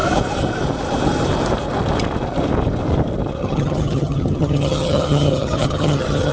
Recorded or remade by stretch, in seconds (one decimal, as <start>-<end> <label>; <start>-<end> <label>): 0.0-3.4 recorded; 3.4-6.3 remade